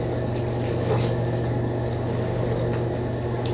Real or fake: fake